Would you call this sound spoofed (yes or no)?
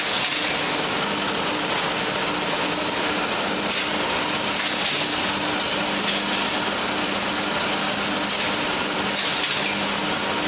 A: no